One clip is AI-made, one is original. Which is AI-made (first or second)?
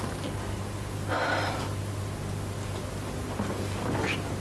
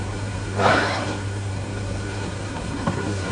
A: second